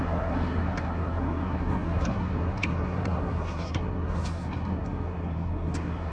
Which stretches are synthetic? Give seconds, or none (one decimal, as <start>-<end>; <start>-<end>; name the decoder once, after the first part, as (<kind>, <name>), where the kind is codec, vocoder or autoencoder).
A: 0.0-6.1 (codec, SNAC)